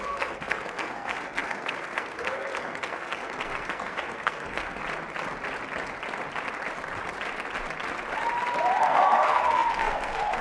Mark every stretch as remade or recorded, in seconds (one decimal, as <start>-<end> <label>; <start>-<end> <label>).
0.0-4.8 remade; 4.8-8.8 recorded; 8.8-10.4 remade